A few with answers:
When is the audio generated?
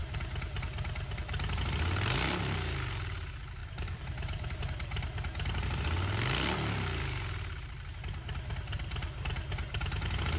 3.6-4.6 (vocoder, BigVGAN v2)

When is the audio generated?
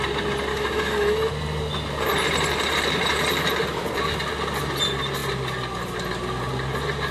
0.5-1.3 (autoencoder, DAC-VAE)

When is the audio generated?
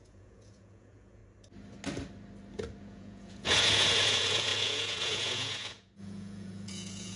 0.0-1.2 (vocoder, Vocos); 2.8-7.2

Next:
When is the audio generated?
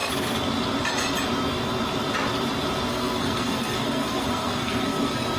2.9-5.4 (codec, SNAC)